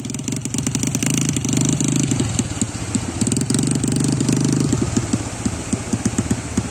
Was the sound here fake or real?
real